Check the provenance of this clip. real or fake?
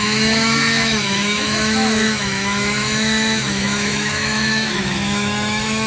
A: fake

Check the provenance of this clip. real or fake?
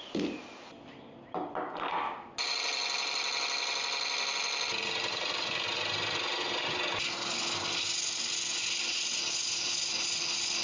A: real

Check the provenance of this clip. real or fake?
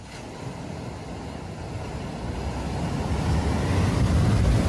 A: real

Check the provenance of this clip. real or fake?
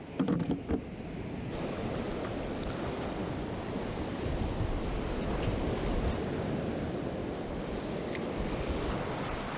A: real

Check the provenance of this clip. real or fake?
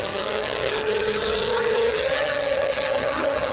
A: fake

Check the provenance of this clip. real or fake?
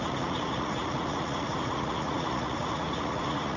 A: fake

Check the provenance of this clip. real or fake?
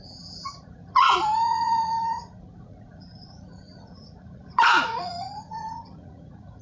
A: fake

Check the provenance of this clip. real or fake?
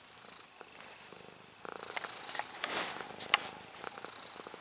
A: real